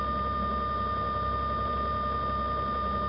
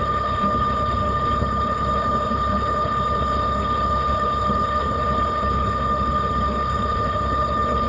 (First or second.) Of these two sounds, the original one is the first